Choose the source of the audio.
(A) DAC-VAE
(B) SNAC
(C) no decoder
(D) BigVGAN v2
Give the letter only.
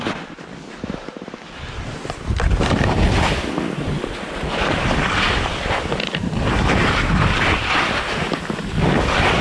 C